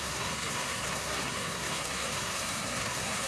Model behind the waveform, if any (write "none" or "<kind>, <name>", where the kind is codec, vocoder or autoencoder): codec, SNAC